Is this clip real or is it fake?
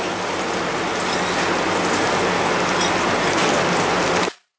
real